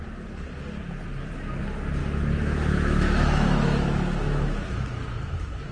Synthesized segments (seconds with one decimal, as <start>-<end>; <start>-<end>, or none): 2.0-5.7